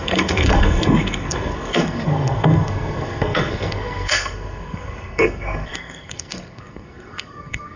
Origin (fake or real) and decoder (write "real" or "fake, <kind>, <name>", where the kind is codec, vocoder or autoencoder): fake, codec, SNAC